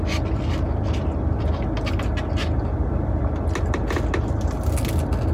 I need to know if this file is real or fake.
real